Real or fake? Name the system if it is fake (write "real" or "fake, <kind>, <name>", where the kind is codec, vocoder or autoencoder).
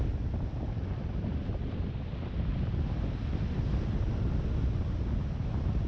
real